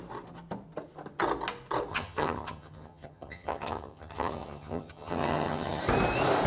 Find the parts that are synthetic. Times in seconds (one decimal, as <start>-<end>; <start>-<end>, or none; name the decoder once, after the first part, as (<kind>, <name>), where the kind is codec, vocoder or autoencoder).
1.9-5.8 (vocoder, HiFi-GAN)